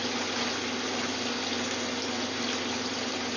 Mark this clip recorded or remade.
recorded